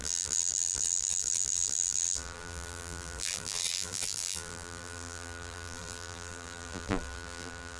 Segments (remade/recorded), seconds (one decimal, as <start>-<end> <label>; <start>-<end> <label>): 0.0-7.8 remade